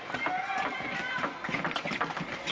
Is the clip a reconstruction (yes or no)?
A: no